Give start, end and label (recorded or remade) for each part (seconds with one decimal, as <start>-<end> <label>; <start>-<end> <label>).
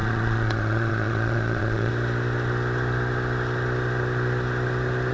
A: 0.0-1.9 remade; 1.9-5.1 recorded